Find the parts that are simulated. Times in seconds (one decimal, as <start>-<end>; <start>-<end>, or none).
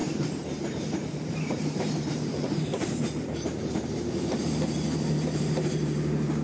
0.0-6.4